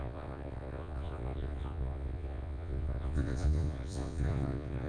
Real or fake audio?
fake